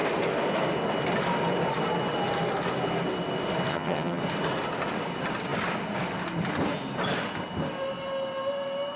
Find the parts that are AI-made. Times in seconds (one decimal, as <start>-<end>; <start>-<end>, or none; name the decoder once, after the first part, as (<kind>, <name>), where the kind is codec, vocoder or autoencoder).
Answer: 3.7-4.2 (vocoder, HiFi-GAN)